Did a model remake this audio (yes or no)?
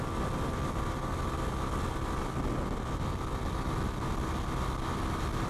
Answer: no